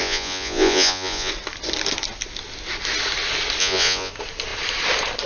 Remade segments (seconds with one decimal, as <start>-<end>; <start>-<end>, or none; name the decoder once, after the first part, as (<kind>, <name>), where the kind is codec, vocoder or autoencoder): 0.0-1.3 (vocoder, Vocos); 3.6-4.1

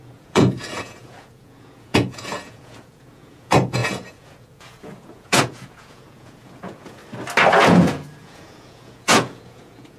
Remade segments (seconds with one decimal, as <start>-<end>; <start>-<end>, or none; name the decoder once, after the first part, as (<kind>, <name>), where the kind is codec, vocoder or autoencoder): 0.0-7.0 (vocoder, Vocos); 7.5-10.0

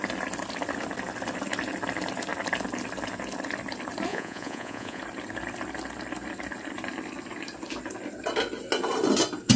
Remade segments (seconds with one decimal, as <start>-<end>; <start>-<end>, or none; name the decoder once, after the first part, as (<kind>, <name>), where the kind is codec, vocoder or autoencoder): 4.1-5.0 (vocoder, Vocos)

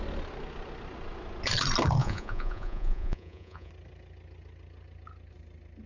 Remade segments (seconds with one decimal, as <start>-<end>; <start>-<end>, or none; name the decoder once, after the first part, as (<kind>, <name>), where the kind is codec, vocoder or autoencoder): 2.0-3.7 (vocoder, Vocos)

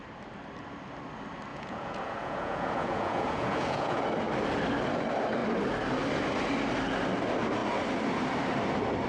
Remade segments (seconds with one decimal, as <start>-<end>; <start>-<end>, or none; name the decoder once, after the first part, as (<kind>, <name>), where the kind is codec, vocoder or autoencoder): 1.5-4.0 (vocoder, Vocos)

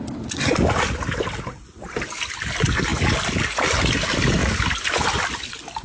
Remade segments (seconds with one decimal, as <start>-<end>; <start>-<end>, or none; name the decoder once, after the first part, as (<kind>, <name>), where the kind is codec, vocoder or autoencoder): none